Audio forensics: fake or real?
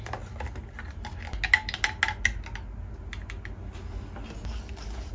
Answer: real